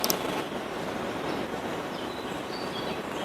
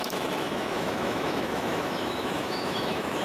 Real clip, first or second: first